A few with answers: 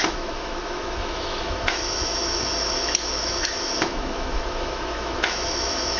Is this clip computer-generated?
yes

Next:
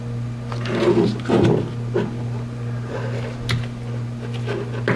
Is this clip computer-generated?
no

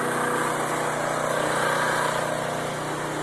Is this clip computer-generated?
no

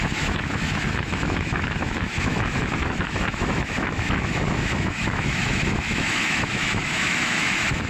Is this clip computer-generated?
yes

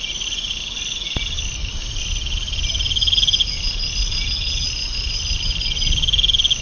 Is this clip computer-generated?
no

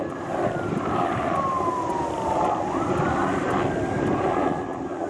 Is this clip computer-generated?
no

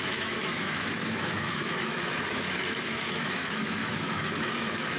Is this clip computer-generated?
yes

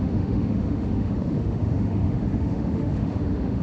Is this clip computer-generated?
yes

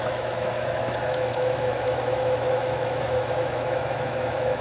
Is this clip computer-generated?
yes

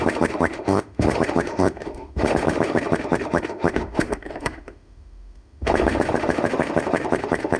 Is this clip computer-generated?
yes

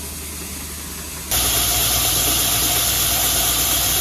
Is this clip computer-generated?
no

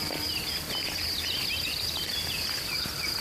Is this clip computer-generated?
no